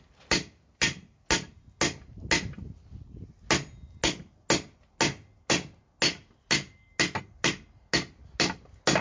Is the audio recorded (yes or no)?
yes